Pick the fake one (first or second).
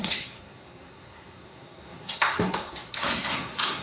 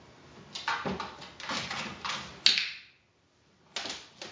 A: first